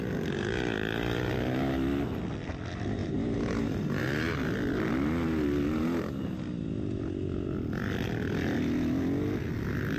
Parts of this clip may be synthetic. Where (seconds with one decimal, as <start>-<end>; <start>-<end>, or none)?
3.0-4.0